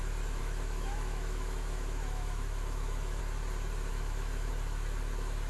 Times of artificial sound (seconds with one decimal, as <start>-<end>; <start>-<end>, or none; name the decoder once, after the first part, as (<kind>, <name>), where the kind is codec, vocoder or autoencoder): 0.4-3.2 (autoencoder, DAC-VAE); 3.9-4.5